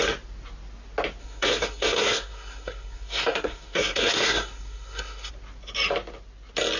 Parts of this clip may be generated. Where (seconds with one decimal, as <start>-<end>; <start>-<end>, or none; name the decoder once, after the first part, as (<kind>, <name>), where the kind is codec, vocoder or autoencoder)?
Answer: 1.2-5.3 (codec, SNAC)